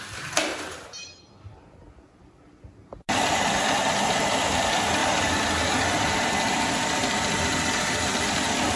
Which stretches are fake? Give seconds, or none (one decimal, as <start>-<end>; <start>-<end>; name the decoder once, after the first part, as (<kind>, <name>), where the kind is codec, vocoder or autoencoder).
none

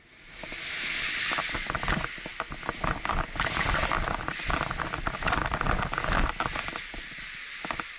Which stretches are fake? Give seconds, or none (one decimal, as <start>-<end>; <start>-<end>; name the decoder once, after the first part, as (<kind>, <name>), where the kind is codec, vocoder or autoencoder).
none

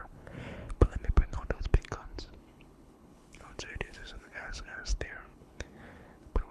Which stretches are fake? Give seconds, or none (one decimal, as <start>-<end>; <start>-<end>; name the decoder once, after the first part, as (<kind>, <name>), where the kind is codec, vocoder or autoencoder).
0.0-6.5 (codec, HILCodec)

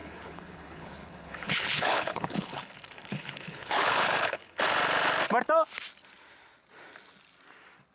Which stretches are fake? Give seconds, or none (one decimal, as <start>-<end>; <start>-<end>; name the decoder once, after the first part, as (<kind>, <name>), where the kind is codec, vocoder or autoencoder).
0.0-4.6 (codec, HILCodec)

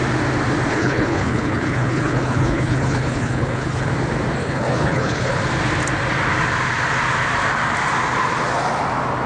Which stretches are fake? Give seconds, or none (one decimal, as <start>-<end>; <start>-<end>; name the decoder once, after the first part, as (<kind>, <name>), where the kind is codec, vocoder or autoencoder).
0.7-3.9 (codec, HILCodec); 4.4-5.4